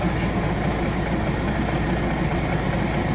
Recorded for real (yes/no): yes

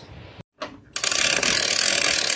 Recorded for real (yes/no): yes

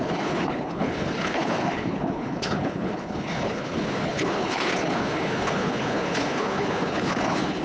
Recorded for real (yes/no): no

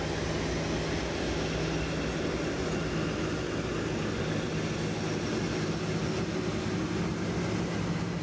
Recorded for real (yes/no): yes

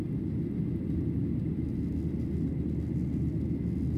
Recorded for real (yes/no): yes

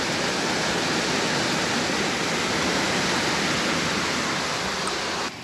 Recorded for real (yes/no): yes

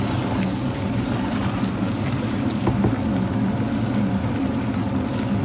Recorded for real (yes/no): yes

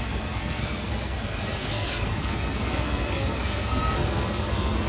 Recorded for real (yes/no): no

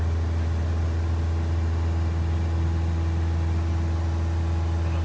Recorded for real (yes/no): yes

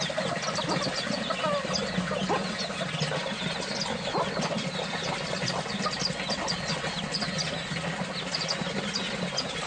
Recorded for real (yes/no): yes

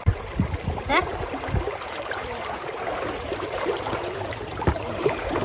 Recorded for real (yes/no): no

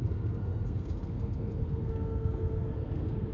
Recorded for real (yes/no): no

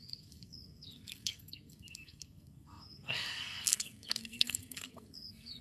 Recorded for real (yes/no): no